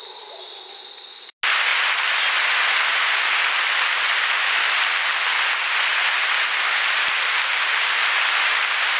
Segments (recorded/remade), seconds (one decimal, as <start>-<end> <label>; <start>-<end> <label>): 0.0-9.0 recorded